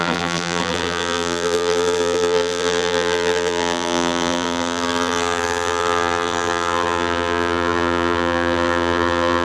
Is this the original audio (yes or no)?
no